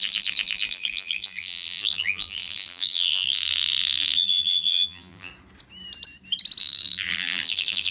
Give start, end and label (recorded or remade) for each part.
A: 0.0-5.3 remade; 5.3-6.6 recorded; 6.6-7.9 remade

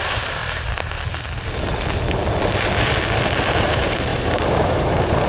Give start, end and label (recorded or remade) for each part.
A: 0.0-0.4 remade; 0.4-3.6 recorded; 3.6-5.3 remade

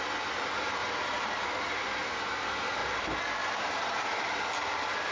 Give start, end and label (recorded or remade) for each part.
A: 0.0-0.8 recorded; 0.8-1.4 remade; 1.4-2.8 recorded; 2.8-4.4 remade; 4.4-5.1 recorded

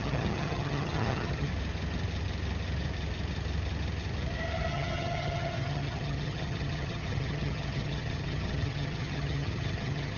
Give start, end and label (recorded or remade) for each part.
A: 0.0-1.5 remade; 1.5-4.7 recorded; 4.7-10.2 remade

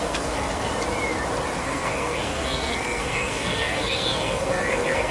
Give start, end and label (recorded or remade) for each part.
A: 0.0-0.7 remade; 0.7-1.6 recorded; 1.6-5.1 remade